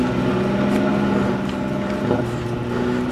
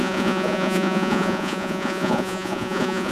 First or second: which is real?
first